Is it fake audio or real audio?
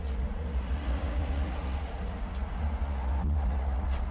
fake